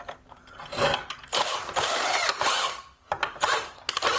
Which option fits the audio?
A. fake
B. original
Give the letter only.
B